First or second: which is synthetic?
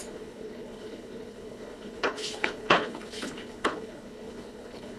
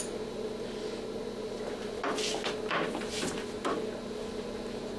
first